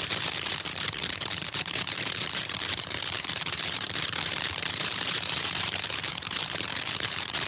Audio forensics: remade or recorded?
remade